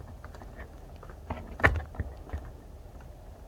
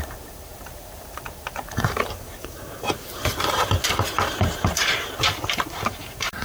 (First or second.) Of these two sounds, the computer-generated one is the second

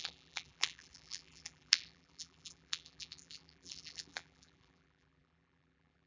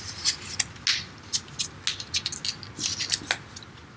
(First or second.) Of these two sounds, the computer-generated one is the first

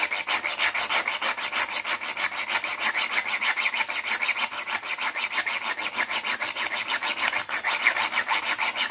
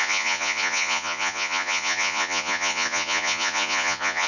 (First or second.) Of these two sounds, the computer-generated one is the second